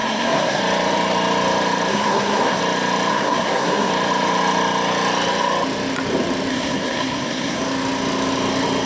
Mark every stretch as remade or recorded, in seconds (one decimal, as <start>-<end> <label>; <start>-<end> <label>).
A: 0.0-0.6 remade; 0.6-1.9 recorded; 1.9-2.6 remade; 2.6-3.1 recorded; 3.1-3.9 remade; 3.9-6.5 recorded; 6.5-7.6 remade; 7.6-8.9 recorded